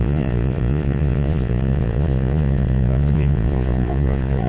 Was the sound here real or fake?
fake